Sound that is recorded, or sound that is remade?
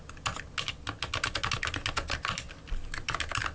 recorded